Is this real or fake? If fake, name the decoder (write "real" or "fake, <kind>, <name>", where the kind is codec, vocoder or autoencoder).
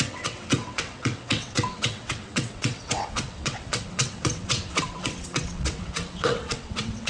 fake, vocoder, WaveNeXt